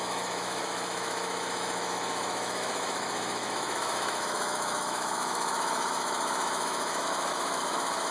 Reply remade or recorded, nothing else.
remade